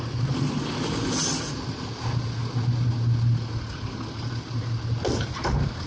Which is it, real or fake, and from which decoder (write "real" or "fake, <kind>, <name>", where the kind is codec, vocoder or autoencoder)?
real